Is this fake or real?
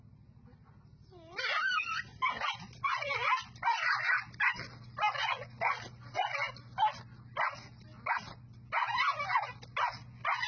real